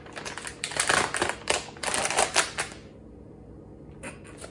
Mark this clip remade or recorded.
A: recorded